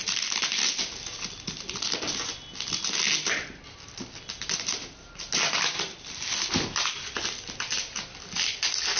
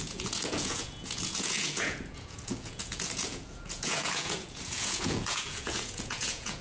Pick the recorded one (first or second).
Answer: first